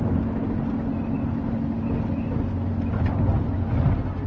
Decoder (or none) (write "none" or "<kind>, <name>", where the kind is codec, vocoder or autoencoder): none